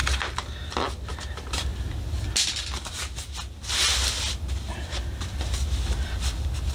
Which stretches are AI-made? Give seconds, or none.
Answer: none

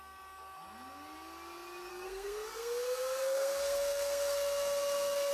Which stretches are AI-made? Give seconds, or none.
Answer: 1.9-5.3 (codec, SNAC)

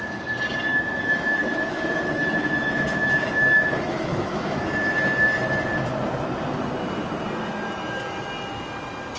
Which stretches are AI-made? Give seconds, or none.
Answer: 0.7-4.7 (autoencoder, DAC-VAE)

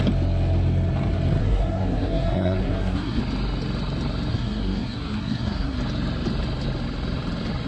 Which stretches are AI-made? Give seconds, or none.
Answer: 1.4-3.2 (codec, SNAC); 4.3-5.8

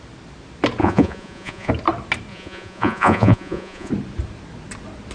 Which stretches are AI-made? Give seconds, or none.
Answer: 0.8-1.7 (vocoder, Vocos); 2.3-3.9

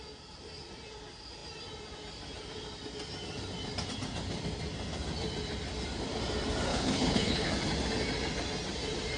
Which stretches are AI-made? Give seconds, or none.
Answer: 6.7-7.5 (codec, HILCodec)